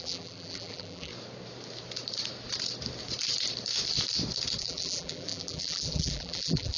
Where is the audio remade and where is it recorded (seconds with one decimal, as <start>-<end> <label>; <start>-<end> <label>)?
0.0-1.1 remade; 1.1-4.6 recorded; 4.6-6.8 remade